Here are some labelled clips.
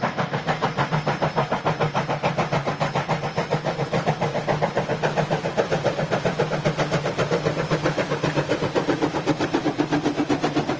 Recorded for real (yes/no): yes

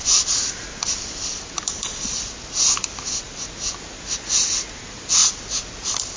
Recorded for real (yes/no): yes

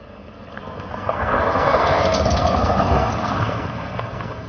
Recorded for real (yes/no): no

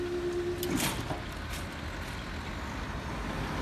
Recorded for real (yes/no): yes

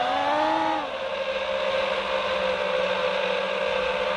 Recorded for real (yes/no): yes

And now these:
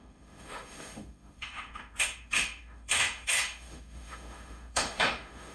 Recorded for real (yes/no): no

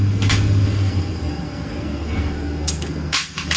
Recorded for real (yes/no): no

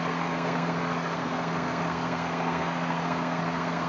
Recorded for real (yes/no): no